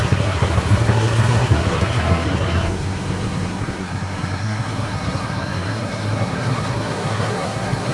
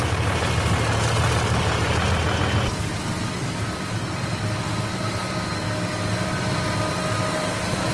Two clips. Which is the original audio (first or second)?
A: second